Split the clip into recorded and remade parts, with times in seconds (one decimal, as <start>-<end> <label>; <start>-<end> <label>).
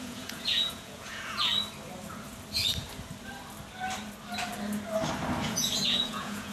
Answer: 0.0-1.5 remade; 1.5-5.4 recorded; 5.4-6.5 remade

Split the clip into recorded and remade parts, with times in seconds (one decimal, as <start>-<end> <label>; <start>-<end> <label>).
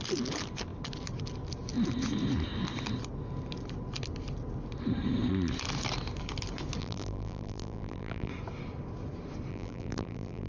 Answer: 0.0-6.8 recorded; 6.8-8.3 remade; 8.3-9.5 recorded; 9.5-10.5 remade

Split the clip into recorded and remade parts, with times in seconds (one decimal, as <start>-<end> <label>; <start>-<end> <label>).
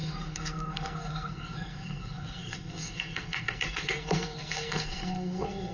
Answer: 0.0-5.7 remade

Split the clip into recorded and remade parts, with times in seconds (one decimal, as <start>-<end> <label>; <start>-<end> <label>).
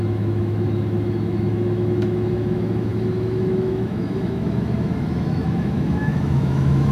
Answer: 0.0-6.9 remade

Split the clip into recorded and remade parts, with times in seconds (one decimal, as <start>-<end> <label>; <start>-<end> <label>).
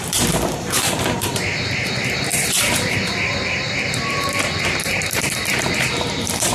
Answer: 0.0-6.5 remade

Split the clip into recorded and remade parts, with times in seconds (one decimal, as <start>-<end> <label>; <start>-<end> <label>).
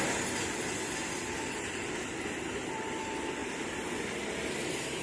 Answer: 0.0-1.0 recorded; 1.0-2.8 remade; 2.8-5.0 recorded